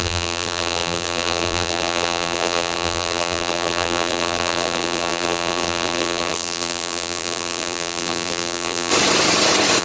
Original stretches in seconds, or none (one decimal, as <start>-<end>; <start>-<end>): 8.9-9.8